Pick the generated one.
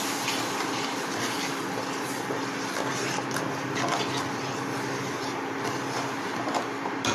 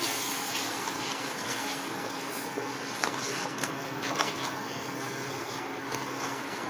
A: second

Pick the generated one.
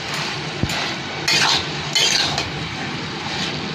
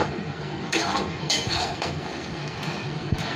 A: second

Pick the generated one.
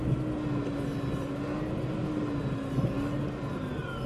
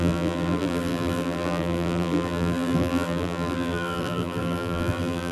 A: second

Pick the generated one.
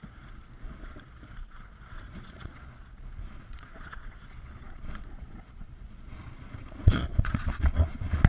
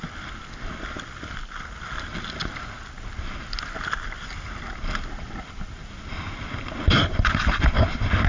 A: first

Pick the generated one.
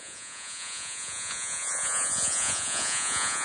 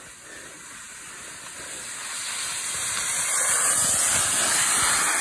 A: first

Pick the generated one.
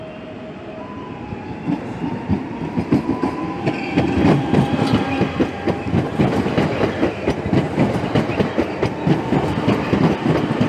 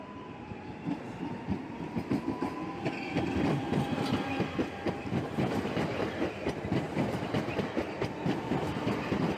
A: second